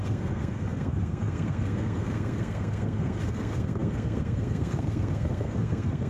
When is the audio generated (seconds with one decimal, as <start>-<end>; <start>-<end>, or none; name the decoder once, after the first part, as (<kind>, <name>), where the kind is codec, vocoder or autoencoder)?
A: 0.0-6.1 (codec, SNAC)